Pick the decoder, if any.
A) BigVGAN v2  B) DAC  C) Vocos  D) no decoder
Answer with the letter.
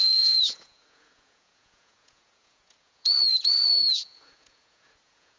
C